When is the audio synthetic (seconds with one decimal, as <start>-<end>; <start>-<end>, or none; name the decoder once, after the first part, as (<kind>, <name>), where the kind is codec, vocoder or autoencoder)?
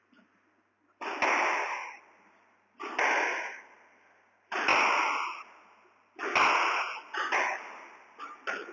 none